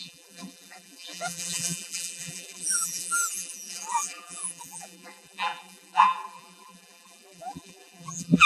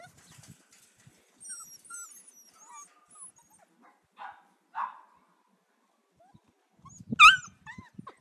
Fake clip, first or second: first